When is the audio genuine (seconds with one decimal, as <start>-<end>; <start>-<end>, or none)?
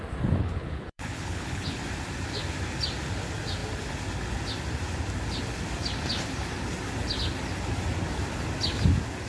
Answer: 0.0-0.4; 1.8-9.3